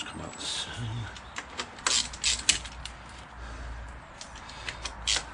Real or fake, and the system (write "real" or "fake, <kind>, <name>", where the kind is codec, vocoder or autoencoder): real